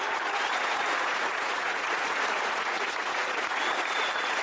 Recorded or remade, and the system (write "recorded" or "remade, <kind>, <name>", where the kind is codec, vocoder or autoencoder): remade, vocoder, Vocos